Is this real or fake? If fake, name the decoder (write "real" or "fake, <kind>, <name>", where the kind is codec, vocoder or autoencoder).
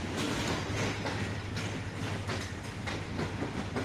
real